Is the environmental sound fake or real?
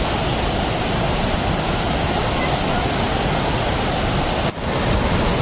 real